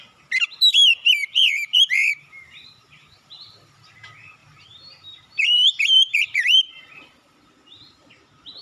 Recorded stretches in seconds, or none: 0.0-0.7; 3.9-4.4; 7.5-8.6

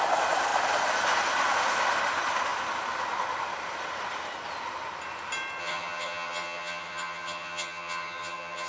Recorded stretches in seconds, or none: 0.0-5.6

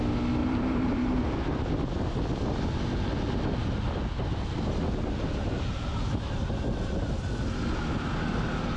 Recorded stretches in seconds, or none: 0.0-0.4; 1.2-8.8

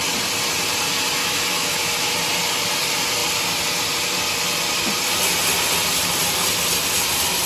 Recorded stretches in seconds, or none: 0.0-1.2; 2.1-7.5

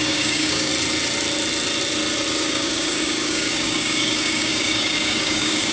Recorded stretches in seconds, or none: 0.7-2.4

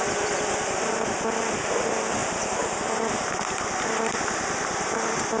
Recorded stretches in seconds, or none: 0.0-5.4